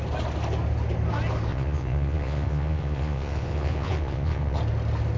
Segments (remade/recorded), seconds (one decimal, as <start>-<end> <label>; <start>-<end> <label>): 0.0-1.5 recorded; 1.5-4.6 remade; 4.6-5.2 recorded